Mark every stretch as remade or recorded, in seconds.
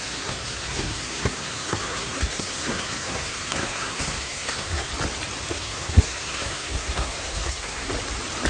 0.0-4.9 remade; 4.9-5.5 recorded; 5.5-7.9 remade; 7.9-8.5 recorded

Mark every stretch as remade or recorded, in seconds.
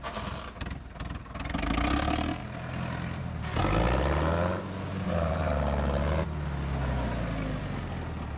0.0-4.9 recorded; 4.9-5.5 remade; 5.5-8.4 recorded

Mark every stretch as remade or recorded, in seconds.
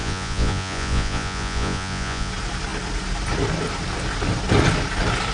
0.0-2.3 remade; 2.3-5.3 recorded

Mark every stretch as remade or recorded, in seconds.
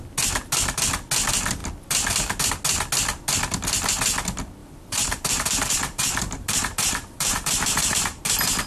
0.0-4.6 recorded; 4.6-8.2 remade; 8.2-8.7 recorded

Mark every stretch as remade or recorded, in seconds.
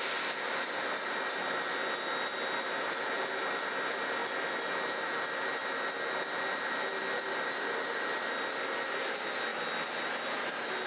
0.0-10.9 recorded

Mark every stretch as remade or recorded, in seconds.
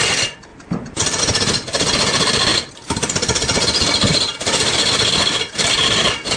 0.0-6.4 recorded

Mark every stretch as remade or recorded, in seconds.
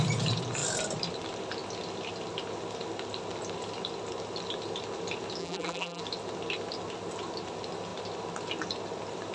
0.0-5.4 recorded; 5.4-6.0 remade; 6.0-9.3 recorded